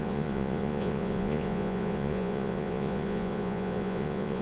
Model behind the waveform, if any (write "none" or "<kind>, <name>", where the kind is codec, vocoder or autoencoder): vocoder, Vocos